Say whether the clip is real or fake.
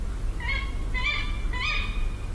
real